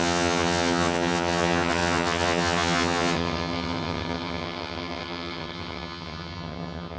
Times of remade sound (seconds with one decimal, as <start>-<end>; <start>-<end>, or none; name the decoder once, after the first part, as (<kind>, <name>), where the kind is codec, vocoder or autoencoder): 0.0-7.0 (vocoder, HiFi-GAN)

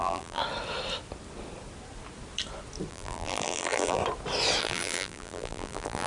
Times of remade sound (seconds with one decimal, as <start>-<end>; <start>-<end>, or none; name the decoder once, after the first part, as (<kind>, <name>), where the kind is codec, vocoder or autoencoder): 0.0-0.4 (vocoder, BigVGAN v2); 2.9-4.0; 4.6-6.1

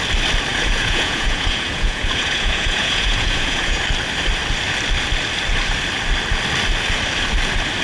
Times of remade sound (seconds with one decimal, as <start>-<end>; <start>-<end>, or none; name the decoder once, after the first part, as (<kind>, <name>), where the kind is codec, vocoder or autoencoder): 0.5-3.8 (vocoder, Vocos)

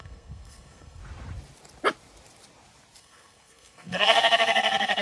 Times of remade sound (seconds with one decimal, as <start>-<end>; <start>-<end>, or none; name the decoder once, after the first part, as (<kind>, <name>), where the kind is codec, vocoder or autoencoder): 0.0-1.0 (codec, SNAC); 3.0-5.0

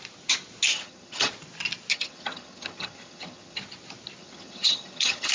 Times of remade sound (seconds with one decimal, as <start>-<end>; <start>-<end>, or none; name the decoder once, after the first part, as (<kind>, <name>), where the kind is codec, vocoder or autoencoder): 0.7-1.3 (vocoder, HiFi-GAN); 1.9-3.6; 4.2-5.3

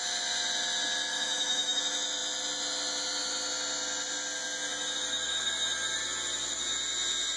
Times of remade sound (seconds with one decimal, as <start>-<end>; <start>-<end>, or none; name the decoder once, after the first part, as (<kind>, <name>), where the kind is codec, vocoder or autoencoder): 1.1-1.8 (autoencoder, DAC-VAE)

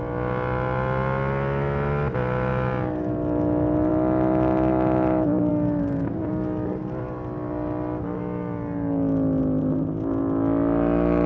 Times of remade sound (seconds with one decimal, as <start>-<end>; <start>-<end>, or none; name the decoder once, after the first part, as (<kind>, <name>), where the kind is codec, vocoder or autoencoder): none

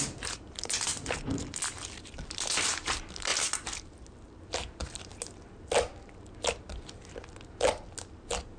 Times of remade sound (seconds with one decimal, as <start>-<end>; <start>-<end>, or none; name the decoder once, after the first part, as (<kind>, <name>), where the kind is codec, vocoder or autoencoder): 0.0-3.3 (vocoder, BigVGAN v2); 4.4-5.1